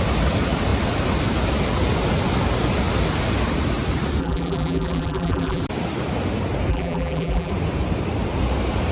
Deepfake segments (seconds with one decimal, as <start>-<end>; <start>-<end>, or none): 4.2-5.6; 6.7-7.5